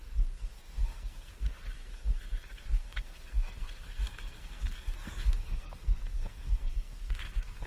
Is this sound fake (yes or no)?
yes